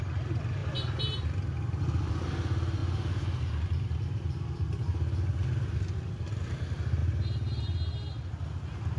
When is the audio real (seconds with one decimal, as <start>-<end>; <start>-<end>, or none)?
0.0-9.0